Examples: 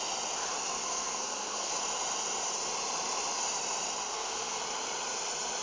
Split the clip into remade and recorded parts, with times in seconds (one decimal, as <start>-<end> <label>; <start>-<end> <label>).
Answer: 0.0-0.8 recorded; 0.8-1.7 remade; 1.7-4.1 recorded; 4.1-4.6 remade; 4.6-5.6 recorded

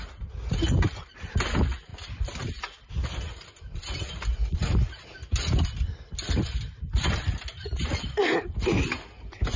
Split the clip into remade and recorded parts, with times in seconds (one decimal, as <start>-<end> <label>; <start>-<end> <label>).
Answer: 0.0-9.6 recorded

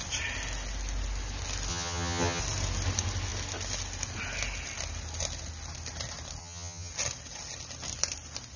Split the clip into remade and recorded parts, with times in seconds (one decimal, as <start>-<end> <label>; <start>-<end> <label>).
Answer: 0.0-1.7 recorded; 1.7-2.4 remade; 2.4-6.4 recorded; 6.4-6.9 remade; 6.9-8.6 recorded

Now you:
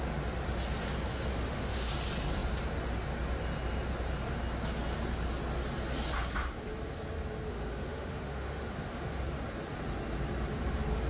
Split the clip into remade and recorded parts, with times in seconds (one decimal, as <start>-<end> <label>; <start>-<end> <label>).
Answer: 0.0-1.3 recorded; 1.3-1.9 remade; 1.9-7.5 recorded; 7.5-9.2 remade; 9.2-11.1 recorded